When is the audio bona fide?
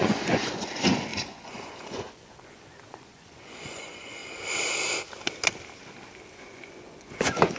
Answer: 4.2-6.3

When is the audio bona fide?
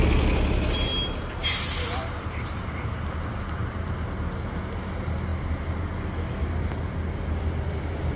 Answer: 0.0-1.4; 2.7-8.2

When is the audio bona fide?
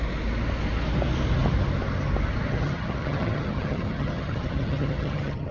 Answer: 0.0-2.5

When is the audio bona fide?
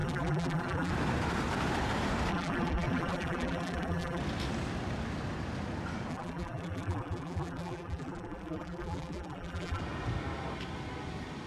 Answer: 0.9-2.3; 4.2-6.1; 9.8-11.5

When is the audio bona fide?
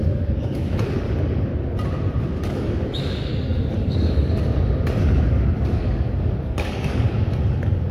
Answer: 1.5-2.2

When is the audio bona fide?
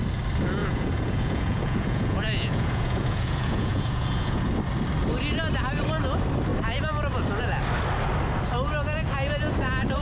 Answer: 0.0-0.6; 4.4-10.0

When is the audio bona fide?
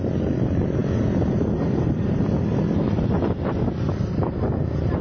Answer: 0.0-5.0